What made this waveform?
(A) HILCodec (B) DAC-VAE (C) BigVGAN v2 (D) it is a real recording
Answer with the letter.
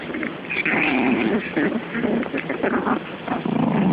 C